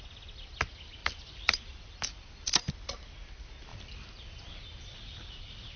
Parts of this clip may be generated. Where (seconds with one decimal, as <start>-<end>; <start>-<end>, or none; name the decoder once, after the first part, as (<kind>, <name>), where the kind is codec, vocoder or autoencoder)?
1.0-2.7 (vocoder, BigVGAN v2); 3.7-4.5